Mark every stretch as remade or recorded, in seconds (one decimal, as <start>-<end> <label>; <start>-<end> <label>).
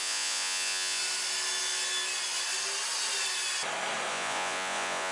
0.0-1.0 remade; 1.0-4.1 recorded; 4.1-5.1 remade